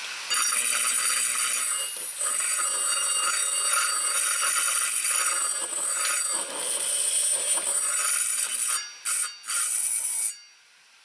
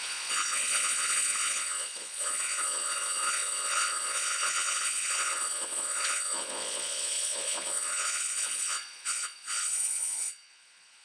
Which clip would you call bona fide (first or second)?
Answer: first